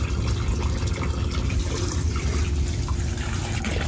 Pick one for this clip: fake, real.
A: fake